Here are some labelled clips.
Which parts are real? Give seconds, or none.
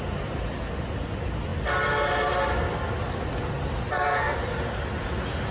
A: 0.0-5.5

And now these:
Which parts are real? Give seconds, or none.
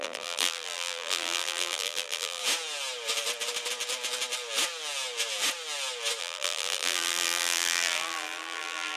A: 2.4-6.2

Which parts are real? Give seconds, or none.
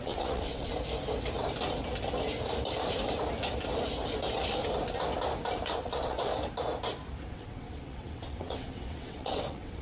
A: 0.7-5.8; 6.3-7.3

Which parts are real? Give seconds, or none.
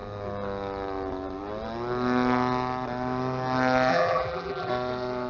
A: 0.0-3.9; 4.7-5.3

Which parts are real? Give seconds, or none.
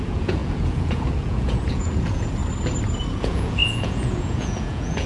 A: 2.4-3.1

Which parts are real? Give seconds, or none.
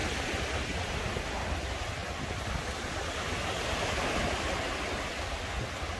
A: 0.0-6.0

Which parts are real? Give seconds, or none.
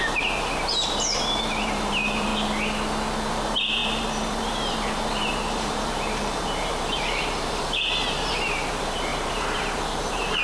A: 2.3-3.3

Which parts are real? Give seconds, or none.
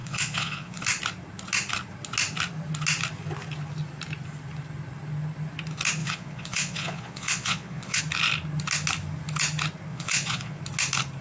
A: 0.8-6.0; 8.0-9.9; 10.6-11.2